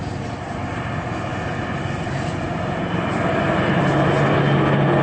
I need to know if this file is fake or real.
real